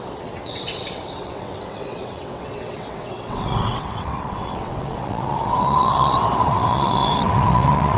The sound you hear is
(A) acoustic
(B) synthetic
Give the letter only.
B